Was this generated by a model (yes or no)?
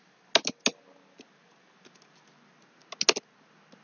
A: no